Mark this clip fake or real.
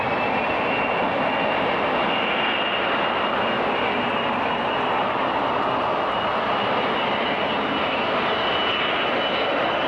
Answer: real